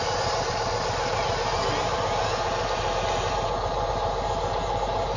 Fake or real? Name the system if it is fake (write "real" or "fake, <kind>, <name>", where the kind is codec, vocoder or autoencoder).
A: real